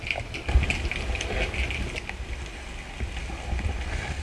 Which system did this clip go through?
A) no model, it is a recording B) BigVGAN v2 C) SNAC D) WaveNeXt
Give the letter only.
A